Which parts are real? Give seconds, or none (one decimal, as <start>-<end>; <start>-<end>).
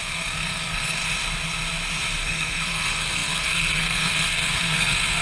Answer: 1.0-2.2